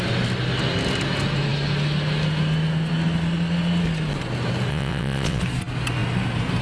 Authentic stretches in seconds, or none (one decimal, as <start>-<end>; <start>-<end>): 0.0-4.7; 5.4-6.6